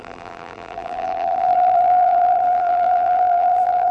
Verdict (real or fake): fake